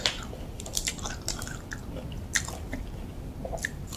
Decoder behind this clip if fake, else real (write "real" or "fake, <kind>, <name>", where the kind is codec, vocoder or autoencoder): real